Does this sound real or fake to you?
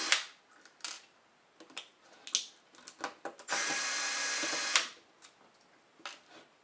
real